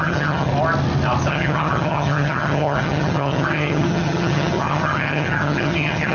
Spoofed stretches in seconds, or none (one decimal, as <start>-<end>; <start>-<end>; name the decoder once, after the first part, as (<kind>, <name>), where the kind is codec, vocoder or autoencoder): 0.0-0.5 (vocoder, HiFi-GAN); 1.3-6.1